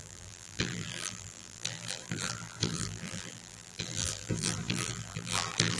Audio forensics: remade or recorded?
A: remade